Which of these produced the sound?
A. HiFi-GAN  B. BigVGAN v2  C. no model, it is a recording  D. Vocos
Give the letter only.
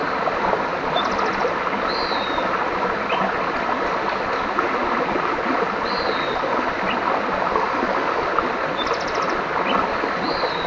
C